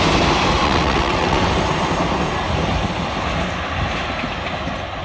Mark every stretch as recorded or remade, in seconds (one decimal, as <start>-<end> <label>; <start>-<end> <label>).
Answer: 0.0-0.6 recorded; 0.6-1.5 remade; 1.5-5.0 recorded